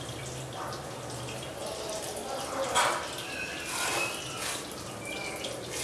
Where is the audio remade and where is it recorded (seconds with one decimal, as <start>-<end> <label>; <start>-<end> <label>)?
0.0-5.8 recorded